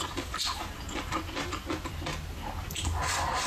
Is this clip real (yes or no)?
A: yes